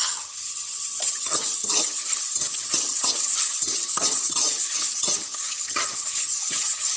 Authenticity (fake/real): fake